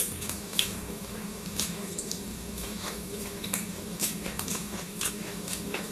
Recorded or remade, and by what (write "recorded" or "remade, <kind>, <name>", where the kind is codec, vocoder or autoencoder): remade, codec, DAC